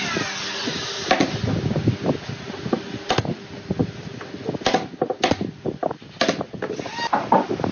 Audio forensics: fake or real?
real